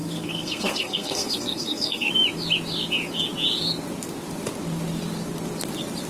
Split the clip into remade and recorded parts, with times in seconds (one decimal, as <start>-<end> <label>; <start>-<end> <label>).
0.0-2.1 remade; 2.1-6.1 recorded